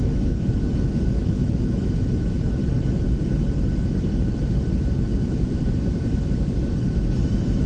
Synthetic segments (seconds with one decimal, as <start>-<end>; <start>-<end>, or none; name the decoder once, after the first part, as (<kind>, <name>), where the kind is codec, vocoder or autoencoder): 0.0-2.6 (autoencoder, DAC-VAE); 6.5-7.7